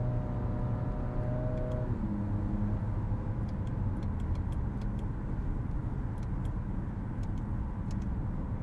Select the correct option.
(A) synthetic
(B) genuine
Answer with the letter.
B